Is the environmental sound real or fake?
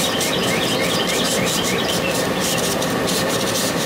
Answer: fake